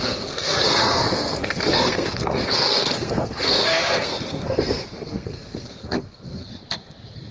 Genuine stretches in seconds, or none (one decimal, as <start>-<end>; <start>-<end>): 6.5-7.3